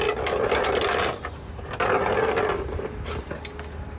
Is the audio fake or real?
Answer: real